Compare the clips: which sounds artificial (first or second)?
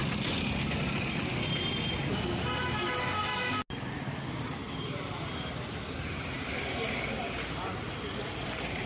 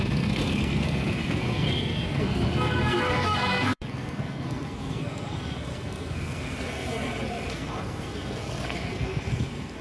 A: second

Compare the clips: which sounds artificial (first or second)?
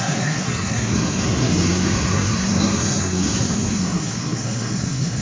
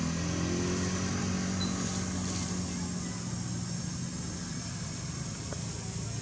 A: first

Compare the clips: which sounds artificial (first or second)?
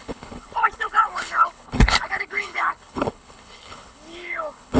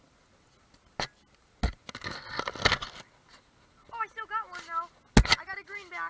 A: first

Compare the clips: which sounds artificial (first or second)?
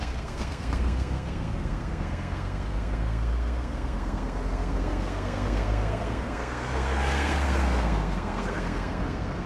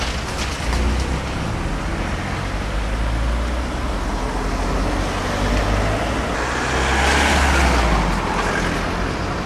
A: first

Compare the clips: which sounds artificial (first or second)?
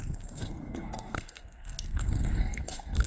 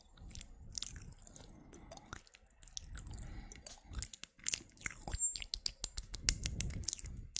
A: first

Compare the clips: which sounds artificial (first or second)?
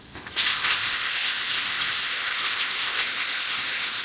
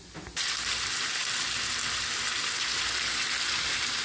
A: first